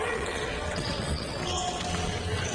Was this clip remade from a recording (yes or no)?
yes